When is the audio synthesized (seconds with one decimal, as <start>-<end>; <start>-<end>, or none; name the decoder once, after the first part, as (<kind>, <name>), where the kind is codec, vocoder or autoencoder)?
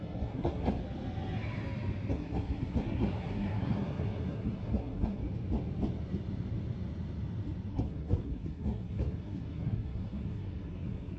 0.0-0.8 (codec, SNAC); 2.1-5.2; 7.7-11.2